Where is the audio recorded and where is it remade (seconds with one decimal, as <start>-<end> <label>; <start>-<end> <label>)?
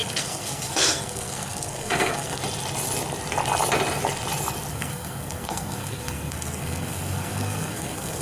0.0-2.4 remade; 2.4-4.7 recorded; 4.7-8.2 remade